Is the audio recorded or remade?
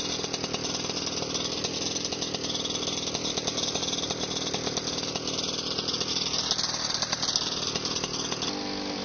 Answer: recorded